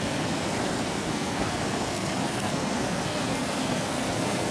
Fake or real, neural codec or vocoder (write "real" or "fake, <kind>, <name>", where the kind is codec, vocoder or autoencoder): fake, codec, SNAC